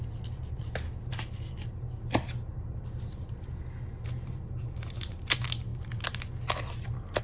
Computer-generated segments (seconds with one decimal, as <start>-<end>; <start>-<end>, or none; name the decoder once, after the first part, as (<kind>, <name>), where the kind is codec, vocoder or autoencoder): none